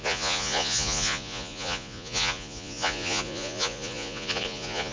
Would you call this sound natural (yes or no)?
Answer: no